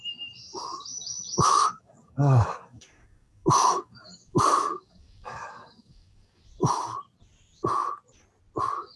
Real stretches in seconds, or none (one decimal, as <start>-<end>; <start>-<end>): 0.0-1.3; 6.4-9.0